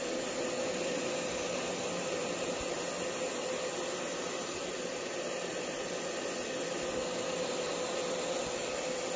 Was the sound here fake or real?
real